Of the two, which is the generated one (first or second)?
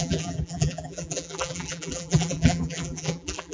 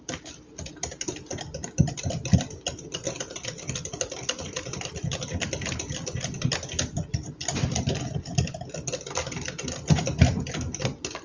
first